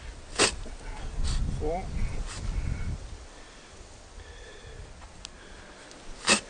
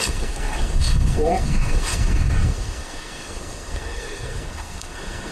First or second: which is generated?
second